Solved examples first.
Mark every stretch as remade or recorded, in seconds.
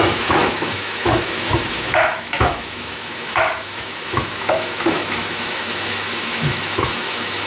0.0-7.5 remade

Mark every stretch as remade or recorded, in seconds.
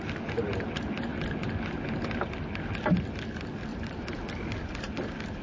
0.0-3.7 recorded; 3.7-4.2 remade; 4.2-5.4 recorded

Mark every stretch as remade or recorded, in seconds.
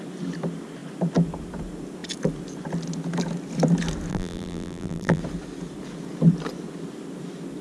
0.0-4.1 recorded; 4.1-5.2 remade; 5.2-7.6 recorded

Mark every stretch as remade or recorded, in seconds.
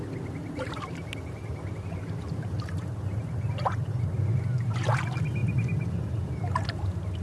0.0-0.4 recorded; 0.4-4.1 remade; 4.1-7.2 recorded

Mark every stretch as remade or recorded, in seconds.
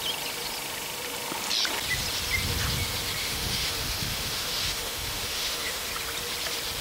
0.0-3.2 recorded; 3.2-5.9 remade; 5.9-6.8 recorded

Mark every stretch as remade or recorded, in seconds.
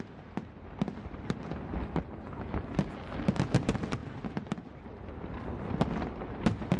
0.0-6.8 recorded